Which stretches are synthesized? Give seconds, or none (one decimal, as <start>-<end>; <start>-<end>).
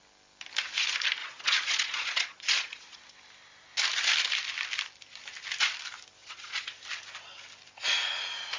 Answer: 1.2-3.0; 6.2-6.8